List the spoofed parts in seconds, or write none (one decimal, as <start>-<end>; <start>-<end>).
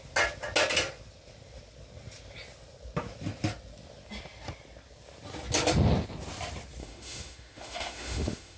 6.8-8.6